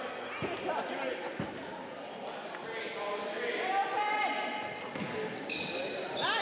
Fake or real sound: real